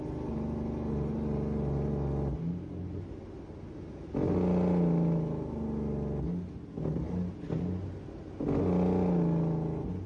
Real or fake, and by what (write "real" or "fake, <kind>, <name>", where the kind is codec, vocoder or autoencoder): real